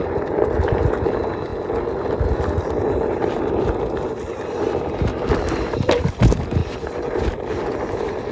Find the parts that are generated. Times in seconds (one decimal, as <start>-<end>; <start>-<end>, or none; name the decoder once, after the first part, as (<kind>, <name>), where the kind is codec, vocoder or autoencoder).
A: 0.0-1.5 (vocoder, BigVGAN v2); 4.4-6.6; 7.2-8.3